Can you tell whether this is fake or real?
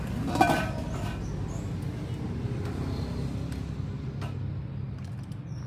real